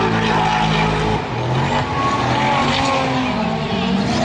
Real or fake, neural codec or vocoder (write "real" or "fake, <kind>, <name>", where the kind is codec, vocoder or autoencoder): real